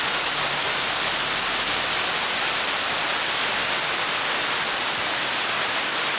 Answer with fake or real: fake